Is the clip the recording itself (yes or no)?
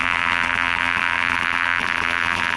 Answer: no